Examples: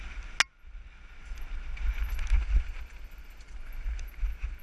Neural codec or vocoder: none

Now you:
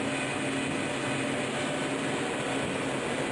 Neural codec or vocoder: none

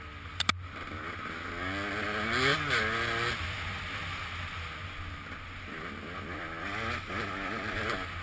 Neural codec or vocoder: none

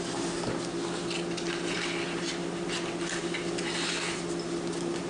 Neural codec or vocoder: none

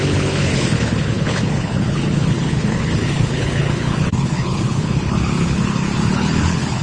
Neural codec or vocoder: codec, HILCodec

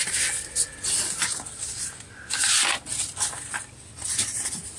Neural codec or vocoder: none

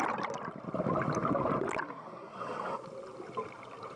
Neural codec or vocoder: none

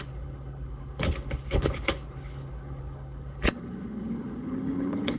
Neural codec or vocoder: codec, HILCodec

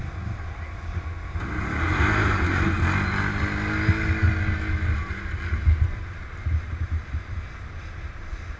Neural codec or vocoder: none